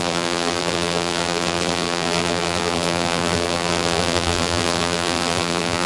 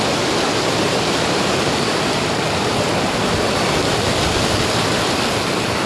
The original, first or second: second